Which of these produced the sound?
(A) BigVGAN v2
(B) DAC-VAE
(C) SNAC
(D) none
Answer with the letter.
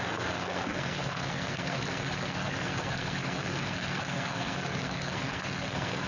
C